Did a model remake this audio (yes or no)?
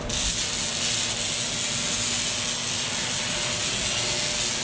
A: no